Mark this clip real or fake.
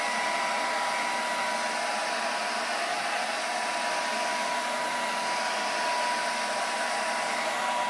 real